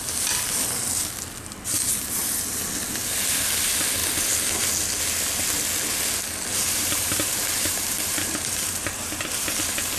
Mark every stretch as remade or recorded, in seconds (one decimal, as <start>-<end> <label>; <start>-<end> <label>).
0.0-6.5 recorded; 6.5-9.6 remade; 9.6-10.0 recorded